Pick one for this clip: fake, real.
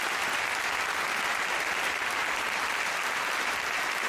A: real